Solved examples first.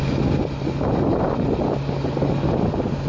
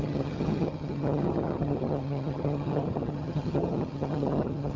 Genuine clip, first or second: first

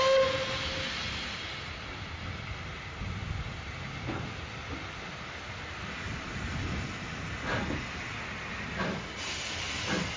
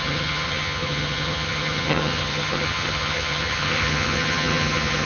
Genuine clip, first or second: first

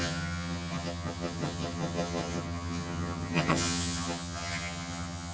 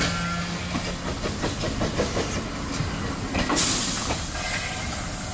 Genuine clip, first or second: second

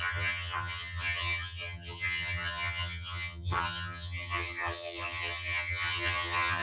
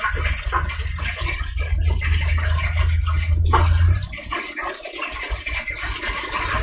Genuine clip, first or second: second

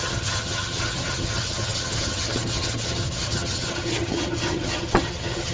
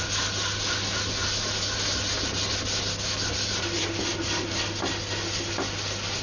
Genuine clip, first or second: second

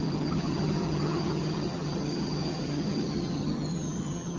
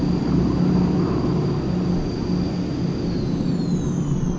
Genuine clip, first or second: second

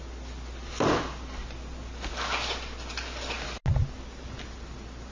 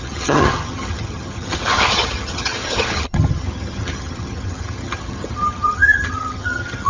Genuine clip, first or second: first